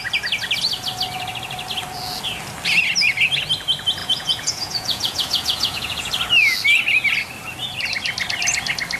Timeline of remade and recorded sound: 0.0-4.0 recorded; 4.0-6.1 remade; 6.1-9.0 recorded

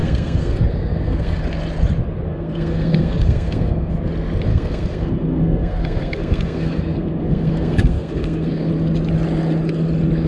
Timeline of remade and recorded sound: 0.0-1.4 remade; 1.4-2.3 recorded; 2.3-3.9 remade; 3.9-4.5 recorded; 4.5-8.7 remade; 8.7-10.3 recorded

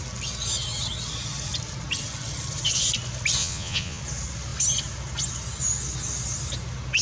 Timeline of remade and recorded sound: 0.0-3.4 recorded; 3.4-4.0 remade; 4.0-7.0 recorded

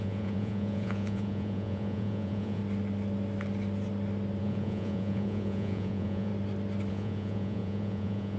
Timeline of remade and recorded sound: 0.0-2.6 remade; 2.6-4.4 recorded; 4.4-6.3 remade; 6.3-6.9 recorded; 6.9-8.4 remade